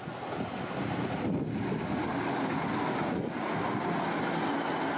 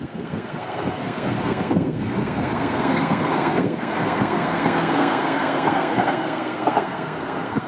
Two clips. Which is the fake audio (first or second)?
second